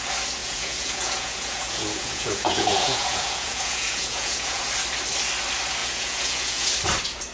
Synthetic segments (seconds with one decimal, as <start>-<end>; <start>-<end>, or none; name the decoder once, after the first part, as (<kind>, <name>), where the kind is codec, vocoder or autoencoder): 0.4-4.6 (vocoder, Vocos); 5.8-6.7